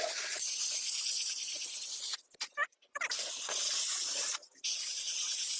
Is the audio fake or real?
real